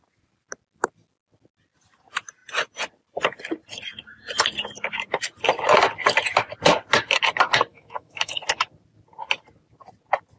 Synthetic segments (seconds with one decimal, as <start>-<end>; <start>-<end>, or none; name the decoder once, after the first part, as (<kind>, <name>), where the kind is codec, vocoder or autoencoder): 7.7-8.4 (autoencoder, DAC-VAE)